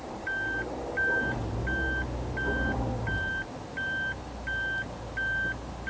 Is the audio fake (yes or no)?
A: no